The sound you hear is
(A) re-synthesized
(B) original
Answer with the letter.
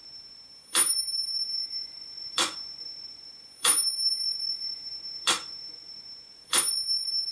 A